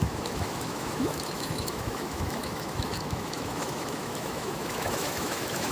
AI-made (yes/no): yes